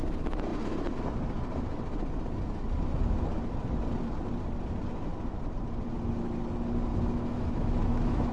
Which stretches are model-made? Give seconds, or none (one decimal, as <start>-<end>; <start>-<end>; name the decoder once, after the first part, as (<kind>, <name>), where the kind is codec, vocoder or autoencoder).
6.9-8.3 (autoencoder, DAC-VAE)

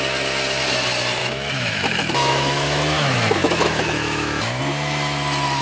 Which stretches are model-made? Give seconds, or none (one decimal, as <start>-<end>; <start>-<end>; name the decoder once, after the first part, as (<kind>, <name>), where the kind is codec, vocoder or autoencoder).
1.2-4.6 (autoencoder, DAC-VAE)

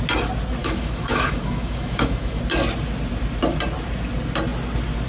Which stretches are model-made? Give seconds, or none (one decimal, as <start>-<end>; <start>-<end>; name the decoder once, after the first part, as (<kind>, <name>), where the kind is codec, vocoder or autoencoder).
0.6-2.4 (autoencoder, DAC-VAE)

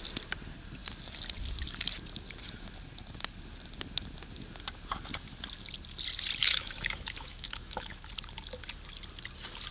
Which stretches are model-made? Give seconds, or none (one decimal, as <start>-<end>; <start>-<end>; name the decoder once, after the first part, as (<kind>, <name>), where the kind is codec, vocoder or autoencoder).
6.4-8.1 (autoencoder, DAC-VAE)

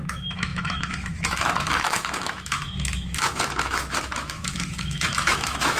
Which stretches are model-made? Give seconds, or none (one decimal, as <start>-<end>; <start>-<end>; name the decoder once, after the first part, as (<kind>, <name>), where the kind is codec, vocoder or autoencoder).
0.0-5.8 (autoencoder, DAC-VAE)

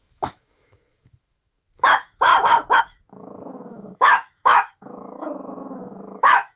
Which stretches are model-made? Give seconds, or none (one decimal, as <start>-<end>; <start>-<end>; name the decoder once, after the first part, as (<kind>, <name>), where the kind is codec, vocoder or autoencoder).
0.0-2.3 (autoencoder, DAC-VAE); 2.8-6.6

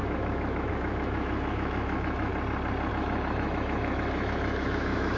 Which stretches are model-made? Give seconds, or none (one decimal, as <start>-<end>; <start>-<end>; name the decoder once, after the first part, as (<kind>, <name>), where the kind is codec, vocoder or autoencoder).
0.0-2.3 (autoencoder, DAC-VAE); 2.9-5.2

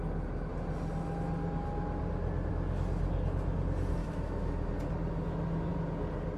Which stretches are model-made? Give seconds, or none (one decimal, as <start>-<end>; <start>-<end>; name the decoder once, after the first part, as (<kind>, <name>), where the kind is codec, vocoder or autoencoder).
4.0-4.7 (autoencoder, DAC-VAE)